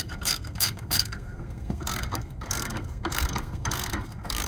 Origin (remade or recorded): remade